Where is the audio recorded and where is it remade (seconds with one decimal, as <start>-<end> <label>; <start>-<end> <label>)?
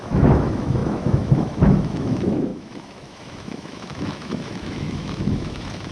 0.0-5.9 remade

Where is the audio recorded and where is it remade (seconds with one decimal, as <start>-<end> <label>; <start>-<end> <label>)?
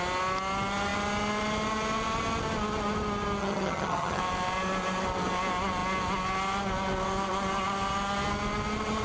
0.0-3.4 recorded; 3.4-4.2 remade; 4.2-9.0 recorded